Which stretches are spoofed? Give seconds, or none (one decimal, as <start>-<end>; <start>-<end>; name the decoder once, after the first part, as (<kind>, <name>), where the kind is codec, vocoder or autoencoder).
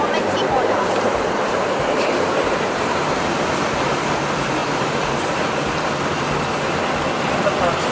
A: 0.0-3.5 (vocoder, BigVGAN v2); 4.6-5.6